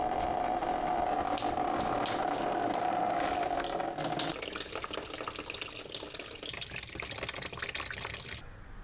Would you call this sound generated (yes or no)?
no